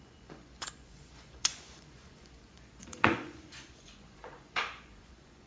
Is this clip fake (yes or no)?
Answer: yes